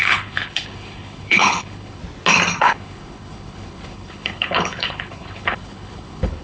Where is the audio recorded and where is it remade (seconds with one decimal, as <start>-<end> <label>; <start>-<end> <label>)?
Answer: 0.0-2.0 remade; 2.0-2.6 recorded; 2.6-6.4 remade